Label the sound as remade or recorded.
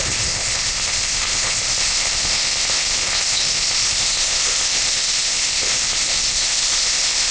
remade